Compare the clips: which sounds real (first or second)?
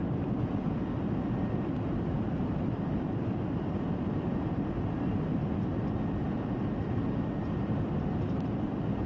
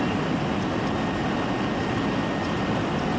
second